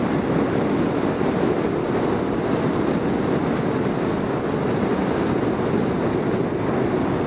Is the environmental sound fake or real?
real